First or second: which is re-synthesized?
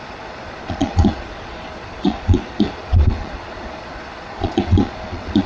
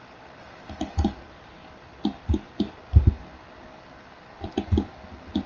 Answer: first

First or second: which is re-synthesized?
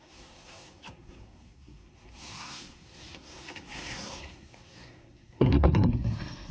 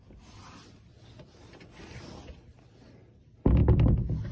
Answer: first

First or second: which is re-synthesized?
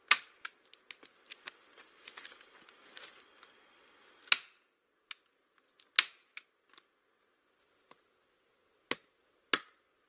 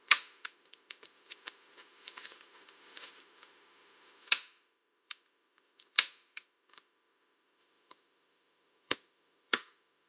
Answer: second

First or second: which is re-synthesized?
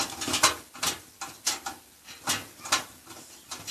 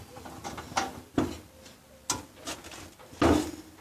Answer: first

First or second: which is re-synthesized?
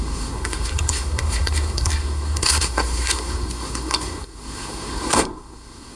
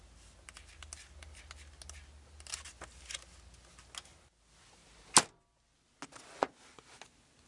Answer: first